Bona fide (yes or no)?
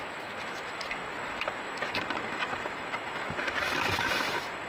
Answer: no